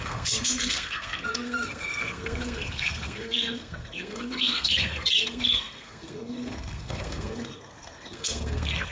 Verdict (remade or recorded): remade